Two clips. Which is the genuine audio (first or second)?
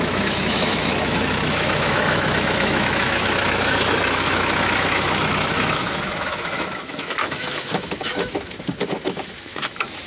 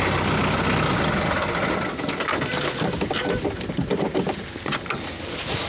second